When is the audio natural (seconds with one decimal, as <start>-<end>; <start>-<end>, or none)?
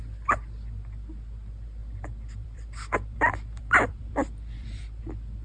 0.0-1.8; 5.0-5.4